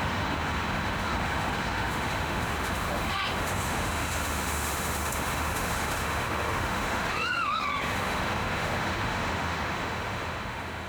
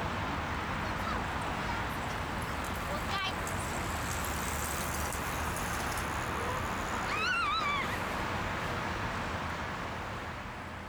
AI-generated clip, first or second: first